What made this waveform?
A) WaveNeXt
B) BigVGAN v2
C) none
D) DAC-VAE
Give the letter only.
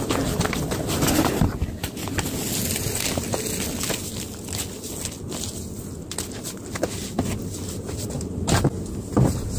C